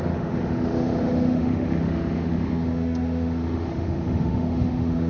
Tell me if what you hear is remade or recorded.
remade